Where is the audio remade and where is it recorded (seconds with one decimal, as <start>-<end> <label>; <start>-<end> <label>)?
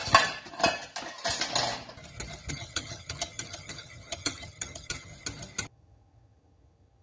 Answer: 0.0-2.5 recorded; 2.5-5.1 remade; 5.1-5.7 recorded; 5.7-7.0 remade